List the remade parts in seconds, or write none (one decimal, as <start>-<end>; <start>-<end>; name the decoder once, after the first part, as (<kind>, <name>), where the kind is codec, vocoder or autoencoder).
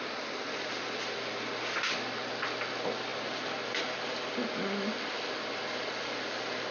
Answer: none